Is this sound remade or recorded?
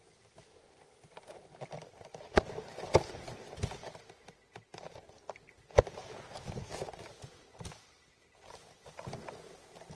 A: recorded